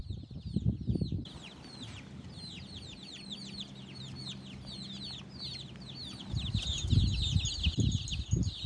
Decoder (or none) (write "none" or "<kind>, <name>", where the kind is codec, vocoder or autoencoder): none